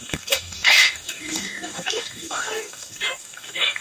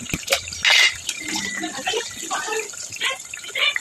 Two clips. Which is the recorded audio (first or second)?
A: second